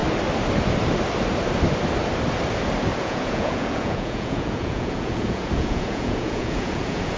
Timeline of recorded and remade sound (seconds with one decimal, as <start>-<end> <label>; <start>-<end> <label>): 0.0-3.0 recorded; 3.0-7.2 remade